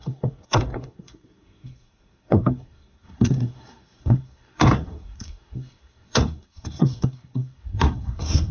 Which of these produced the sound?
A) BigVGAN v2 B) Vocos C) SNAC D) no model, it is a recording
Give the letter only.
C